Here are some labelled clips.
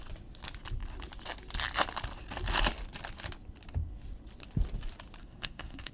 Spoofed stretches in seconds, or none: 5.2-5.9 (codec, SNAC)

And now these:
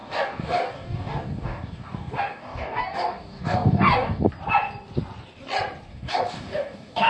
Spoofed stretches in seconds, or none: 0.0-4.3 (codec, DAC); 5.9-7.1

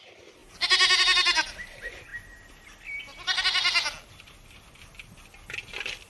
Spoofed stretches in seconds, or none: none

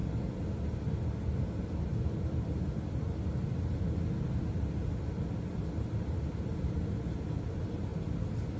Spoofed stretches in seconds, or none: none

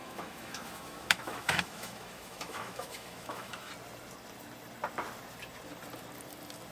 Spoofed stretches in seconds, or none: 0.0-3.7 (autoencoder, DAC-VAE)